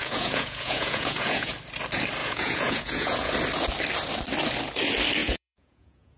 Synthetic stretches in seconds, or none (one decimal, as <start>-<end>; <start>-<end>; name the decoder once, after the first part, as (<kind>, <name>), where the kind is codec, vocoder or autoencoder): 0.0-1.5 (vocoder, Vocos); 2.2-3.3; 5.2-6.2